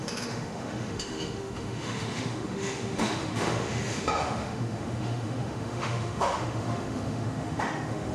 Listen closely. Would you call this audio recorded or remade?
remade